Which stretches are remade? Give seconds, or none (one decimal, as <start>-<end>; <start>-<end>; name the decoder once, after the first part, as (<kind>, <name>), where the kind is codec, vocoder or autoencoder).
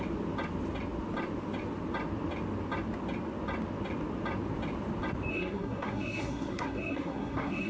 5.3-7.7 (codec, SNAC)